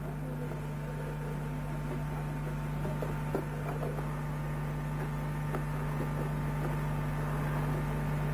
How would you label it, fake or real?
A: real